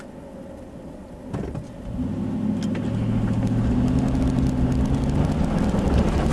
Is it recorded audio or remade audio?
recorded